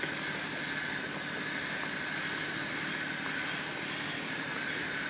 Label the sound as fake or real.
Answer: real